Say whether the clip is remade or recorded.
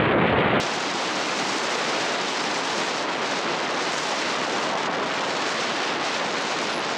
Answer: recorded